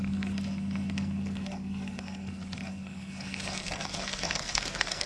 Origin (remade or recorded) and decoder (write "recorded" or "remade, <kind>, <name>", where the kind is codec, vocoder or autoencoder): remade, codec, SNAC